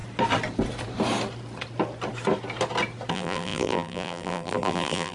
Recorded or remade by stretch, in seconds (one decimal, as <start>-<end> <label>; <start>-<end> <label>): 0.0-3.1 recorded; 3.1-5.1 remade